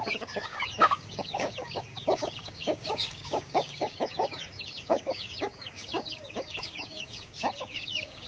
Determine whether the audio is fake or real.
fake